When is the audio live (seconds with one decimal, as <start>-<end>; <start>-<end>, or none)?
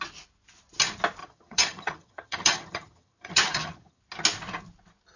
0.0-1.2; 4.0-5.2